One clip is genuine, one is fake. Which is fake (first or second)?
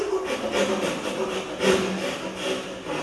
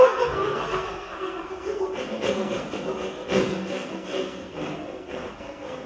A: second